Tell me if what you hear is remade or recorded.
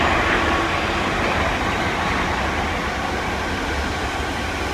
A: recorded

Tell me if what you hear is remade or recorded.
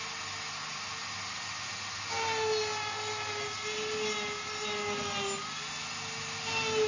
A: recorded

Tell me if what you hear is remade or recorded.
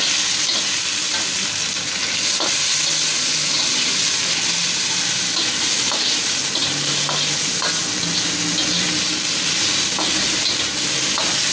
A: recorded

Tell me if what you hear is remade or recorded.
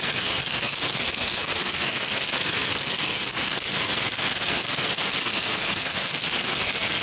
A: remade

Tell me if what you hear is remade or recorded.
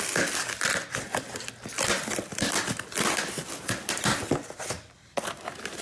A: recorded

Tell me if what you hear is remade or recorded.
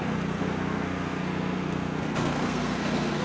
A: remade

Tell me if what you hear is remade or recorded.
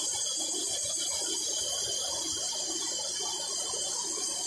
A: recorded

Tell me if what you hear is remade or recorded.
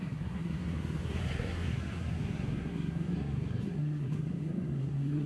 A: remade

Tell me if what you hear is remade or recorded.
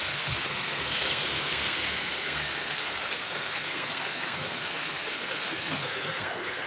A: remade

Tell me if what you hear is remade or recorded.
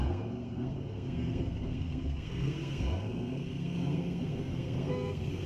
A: remade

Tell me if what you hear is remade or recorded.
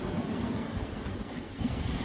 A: remade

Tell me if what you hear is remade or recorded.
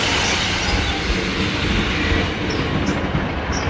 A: recorded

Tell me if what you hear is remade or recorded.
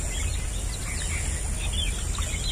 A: recorded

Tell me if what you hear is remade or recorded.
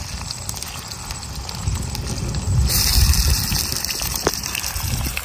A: recorded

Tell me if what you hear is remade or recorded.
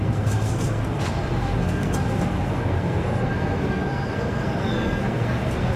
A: remade